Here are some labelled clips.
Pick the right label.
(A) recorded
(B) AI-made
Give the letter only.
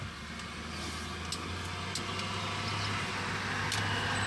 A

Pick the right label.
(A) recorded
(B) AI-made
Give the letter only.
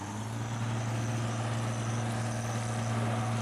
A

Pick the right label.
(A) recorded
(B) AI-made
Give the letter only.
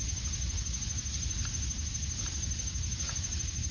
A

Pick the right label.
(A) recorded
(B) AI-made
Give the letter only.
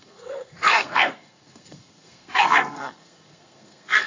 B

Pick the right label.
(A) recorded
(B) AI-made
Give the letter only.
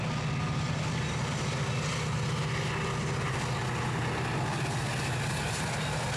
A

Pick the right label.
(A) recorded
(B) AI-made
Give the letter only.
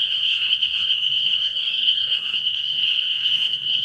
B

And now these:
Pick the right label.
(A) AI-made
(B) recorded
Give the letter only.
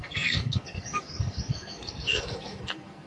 A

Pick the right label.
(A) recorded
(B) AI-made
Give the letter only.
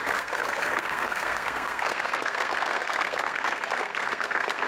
B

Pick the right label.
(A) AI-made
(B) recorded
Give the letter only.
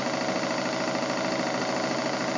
B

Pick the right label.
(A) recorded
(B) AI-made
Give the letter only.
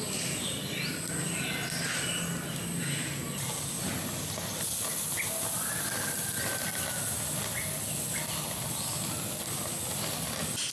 A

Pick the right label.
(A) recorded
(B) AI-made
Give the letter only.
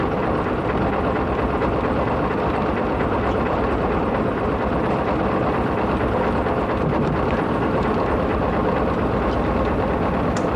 A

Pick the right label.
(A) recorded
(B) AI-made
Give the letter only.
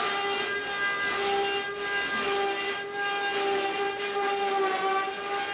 A